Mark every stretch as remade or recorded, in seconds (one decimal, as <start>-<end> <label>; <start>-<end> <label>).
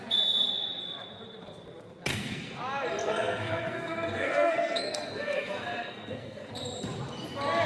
0.0-2.1 recorded; 2.1-2.6 remade; 2.6-3.0 recorded; 3.0-6.5 remade; 6.5-7.7 recorded